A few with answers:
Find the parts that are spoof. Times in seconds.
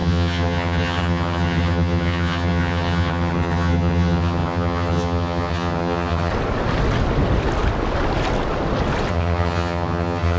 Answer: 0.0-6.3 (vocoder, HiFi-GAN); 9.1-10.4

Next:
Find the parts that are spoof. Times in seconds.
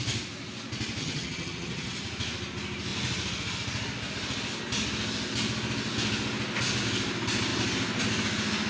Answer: 1.0-2.0 (vocoder, HiFi-GAN)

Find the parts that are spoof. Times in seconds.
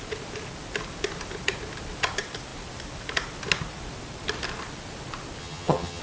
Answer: 5.4-6.0 (vocoder, HiFi-GAN)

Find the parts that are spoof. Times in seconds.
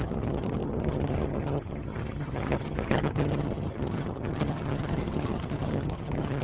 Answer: 0.0-6.4 (vocoder, HiFi-GAN)